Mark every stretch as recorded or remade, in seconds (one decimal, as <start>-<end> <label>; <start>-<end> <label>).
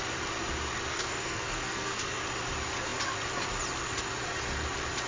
0.0-0.9 recorded; 0.9-2.2 remade; 2.2-5.1 recorded